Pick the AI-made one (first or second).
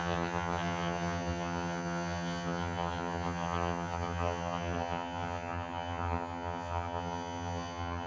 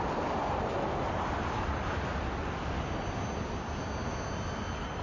first